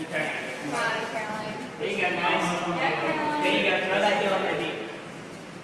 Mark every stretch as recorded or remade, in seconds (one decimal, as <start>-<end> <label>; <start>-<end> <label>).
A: 0.0-5.6 recorded